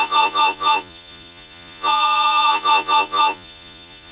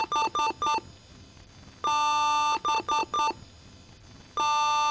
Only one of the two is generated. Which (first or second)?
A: first